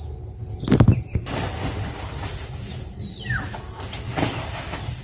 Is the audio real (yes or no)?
yes